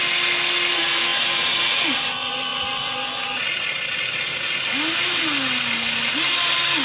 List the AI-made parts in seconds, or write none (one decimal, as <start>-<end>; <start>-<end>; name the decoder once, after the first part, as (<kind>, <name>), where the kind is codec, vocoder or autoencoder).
none